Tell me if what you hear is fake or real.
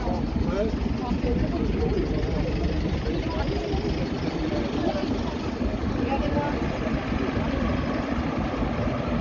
real